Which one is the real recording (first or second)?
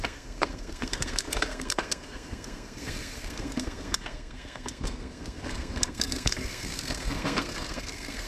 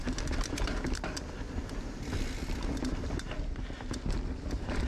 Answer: second